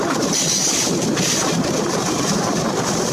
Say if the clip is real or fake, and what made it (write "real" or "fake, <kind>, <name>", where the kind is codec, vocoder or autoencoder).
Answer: fake, vocoder, BigVGAN v2